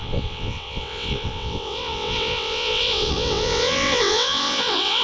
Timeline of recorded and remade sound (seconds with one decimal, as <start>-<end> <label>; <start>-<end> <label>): 0.0-5.0 remade